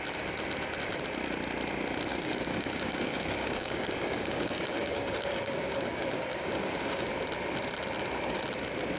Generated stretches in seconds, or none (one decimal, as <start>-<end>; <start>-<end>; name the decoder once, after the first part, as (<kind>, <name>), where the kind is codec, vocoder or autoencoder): 2.1-7.1 (codec, DAC)